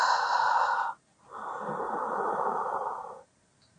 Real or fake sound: real